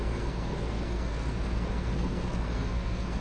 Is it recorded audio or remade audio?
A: remade